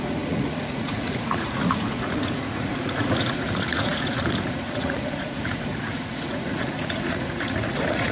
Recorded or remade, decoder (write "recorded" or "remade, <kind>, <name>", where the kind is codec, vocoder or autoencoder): remade, vocoder, Vocos